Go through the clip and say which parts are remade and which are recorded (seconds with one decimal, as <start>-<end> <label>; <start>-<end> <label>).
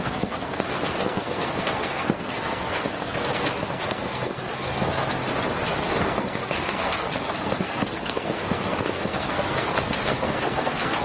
0.0-5.2 remade; 5.2-5.9 recorded; 5.9-11.0 remade